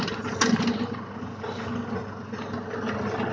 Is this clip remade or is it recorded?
recorded